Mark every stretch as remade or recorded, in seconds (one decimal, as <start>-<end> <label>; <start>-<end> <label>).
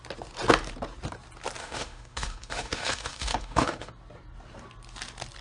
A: 0.0-1.6 recorded; 1.6-3.9 remade; 3.9-5.4 recorded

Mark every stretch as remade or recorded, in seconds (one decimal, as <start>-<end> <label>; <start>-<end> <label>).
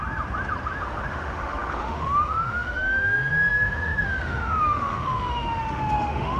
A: 0.0-0.8 recorded; 0.8-6.4 remade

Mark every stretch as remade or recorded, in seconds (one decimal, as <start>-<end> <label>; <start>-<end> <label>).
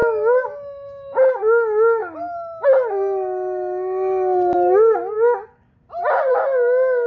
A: 0.0-1.4 remade; 1.4-7.1 recorded